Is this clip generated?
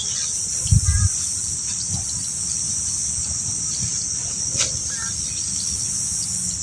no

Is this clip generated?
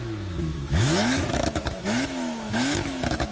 yes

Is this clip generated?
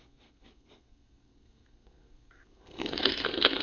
yes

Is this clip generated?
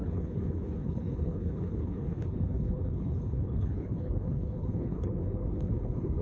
yes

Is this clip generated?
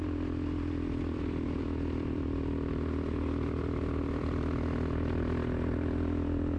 yes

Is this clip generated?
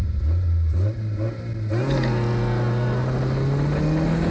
no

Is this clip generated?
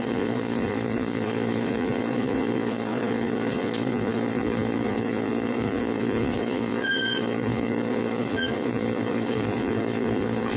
yes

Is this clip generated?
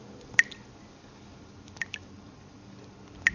no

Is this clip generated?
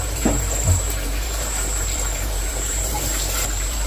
yes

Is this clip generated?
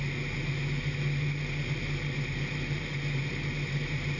no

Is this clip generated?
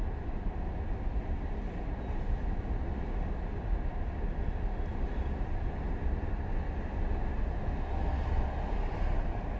no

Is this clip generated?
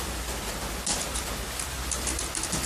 no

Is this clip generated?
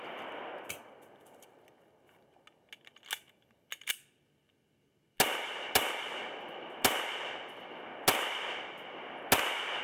no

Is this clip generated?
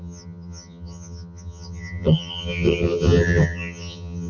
yes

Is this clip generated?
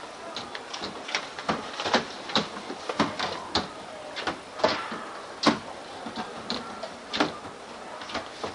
no